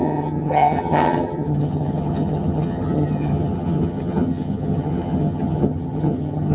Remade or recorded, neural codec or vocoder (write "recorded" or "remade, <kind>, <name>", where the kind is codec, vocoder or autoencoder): remade, vocoder, HiFi-GAN